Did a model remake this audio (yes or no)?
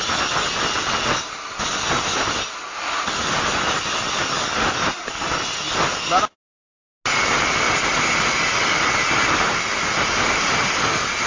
no